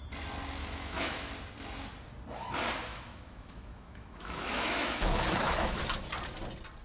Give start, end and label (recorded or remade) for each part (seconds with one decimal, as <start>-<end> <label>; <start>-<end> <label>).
0.0-0.6 recorded; 0.6-1.3 remade; 1.3-2.9 recorded; 2.9-5.8 remade; 5.8-6.8 recorded